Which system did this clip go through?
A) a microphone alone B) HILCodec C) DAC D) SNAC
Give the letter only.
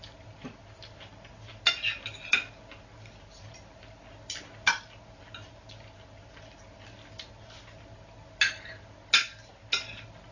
A